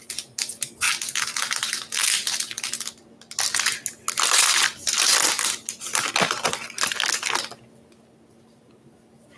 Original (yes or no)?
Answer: yes